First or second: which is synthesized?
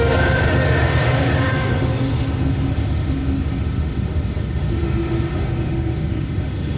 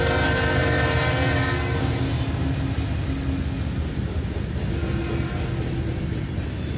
first